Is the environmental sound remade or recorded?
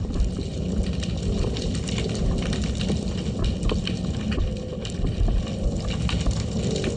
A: recorded